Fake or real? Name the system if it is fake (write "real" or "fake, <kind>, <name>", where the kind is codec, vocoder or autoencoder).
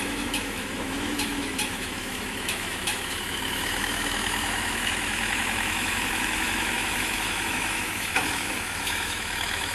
fake, autoencoder, DAC-VAE